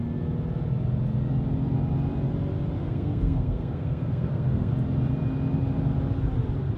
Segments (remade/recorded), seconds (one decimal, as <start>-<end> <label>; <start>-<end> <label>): 0.0-2.9 recorded; 2.9-4.7 remade; 4.7-6.8 recorded